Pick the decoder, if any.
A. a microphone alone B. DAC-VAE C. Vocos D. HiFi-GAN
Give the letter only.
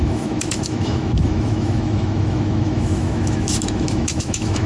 B